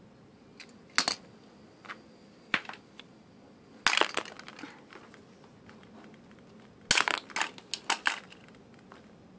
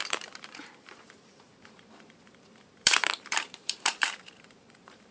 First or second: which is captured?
first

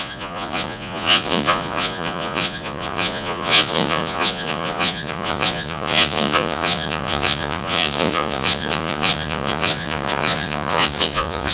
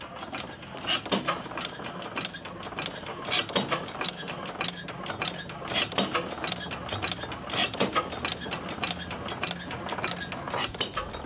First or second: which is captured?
second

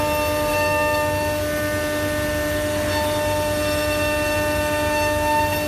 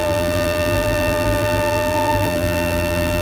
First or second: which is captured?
first